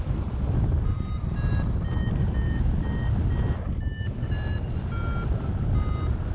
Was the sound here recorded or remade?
recorded